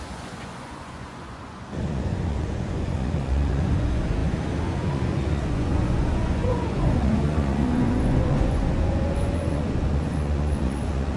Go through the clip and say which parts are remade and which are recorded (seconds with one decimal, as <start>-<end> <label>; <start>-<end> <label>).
0.0-11.2 remade